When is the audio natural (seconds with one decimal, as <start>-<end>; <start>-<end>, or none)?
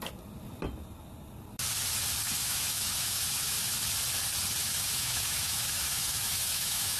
0.0-2.4; 3.8-4.6